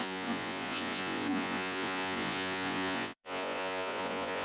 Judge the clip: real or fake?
fake